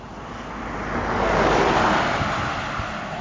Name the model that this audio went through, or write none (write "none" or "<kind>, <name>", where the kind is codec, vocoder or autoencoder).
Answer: none